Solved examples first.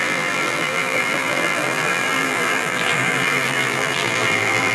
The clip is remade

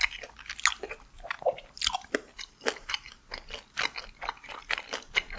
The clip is recorded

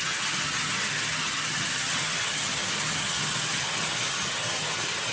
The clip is remade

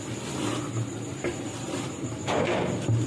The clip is recorded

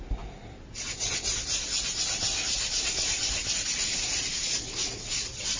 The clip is recorded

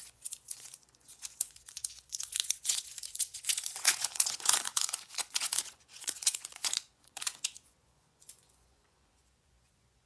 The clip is remade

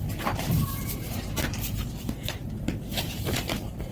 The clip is remade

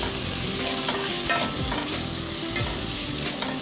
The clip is recorded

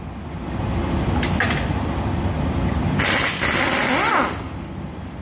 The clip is recorded